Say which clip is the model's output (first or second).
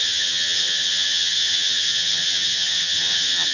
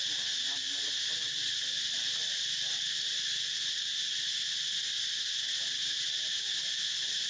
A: first